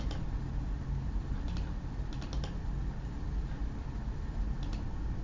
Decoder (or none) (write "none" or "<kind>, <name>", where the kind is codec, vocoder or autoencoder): none